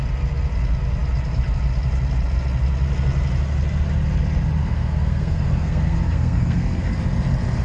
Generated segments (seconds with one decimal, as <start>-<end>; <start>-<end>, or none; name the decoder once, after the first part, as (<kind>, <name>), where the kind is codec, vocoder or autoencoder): 4.6-6.9 (codec, SNAC)